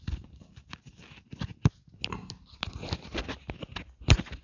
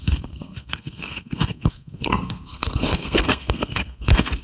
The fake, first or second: second